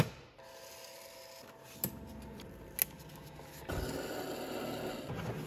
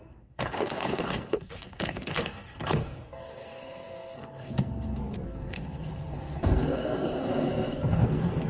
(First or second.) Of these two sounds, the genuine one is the first